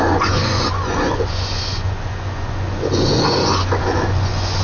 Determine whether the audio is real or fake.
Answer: fake